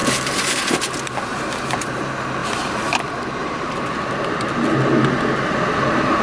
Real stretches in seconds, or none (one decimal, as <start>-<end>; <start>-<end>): 0.6-1.3; 2.0-2.4; 3.0-3.4; 4.1-6.2